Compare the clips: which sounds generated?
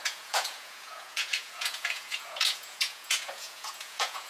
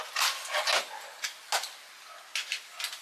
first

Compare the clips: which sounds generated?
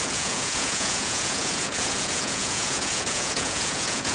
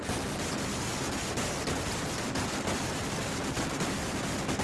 first